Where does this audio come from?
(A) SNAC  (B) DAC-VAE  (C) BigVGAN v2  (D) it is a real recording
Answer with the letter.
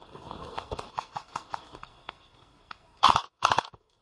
A